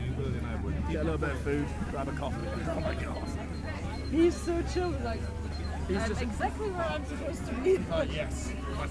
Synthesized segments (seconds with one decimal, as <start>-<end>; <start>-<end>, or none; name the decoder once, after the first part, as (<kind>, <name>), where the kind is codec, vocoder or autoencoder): none